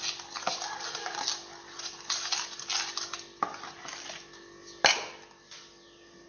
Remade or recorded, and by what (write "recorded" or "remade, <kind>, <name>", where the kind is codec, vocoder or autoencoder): recorded